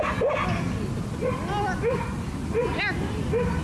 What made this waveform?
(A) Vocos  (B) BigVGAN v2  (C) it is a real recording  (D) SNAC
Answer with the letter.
C